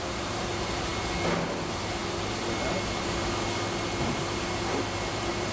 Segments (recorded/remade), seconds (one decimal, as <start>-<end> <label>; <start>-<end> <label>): 0.0-0.9 remade; 0.9-1.5 recorded; 1.5-2.0 remade; 2.0-4.0 recorded; 4.0-5.5 remade